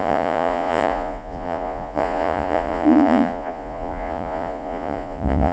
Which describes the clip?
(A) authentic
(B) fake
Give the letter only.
B